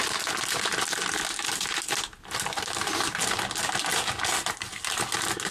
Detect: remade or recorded recorded